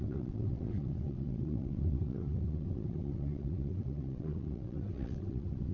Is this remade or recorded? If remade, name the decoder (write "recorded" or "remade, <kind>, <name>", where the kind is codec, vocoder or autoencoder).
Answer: remade, vocoder, WaveNeXt